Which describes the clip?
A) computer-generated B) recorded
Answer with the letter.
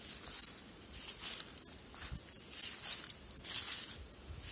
B